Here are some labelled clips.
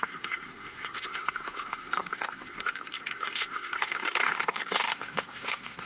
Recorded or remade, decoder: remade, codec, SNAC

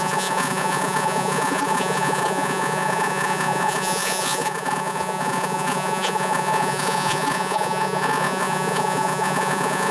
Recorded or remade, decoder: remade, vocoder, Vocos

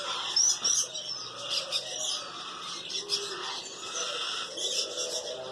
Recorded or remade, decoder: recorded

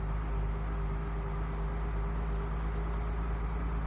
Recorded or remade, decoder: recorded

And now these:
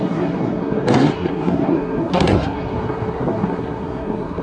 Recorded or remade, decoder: remade, codec, SNAC